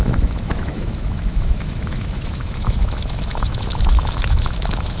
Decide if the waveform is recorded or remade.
remade